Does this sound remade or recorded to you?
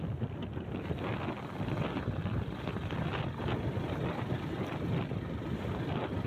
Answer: recorded